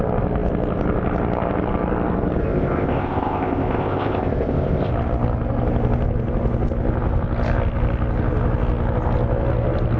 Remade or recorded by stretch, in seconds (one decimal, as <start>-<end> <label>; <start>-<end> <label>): 0.0-2.4 recorded; 2.4-4.9 remade; 4.9-10.0 recorded